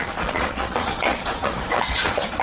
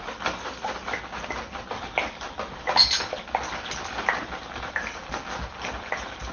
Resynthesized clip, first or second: first